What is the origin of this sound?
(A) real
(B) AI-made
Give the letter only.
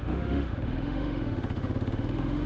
B